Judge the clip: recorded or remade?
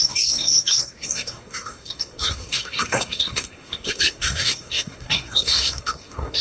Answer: remade